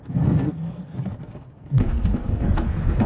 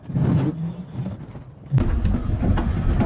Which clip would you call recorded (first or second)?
second